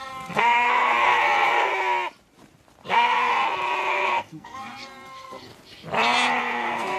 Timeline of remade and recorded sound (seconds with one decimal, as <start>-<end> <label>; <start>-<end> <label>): 0.0-1.7 remade; 1.7-2.9 recorded; 2.9-3.3 remade; 3.3-3.9 recorded; 3.9-5.5 remade; 5.5-6.4 recorded; 6.4-7.0 remade